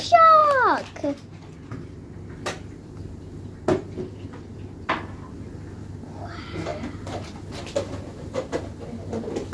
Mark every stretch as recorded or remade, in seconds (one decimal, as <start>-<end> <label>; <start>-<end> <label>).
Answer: 0.0-9.5 recorded